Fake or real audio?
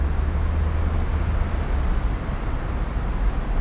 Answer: real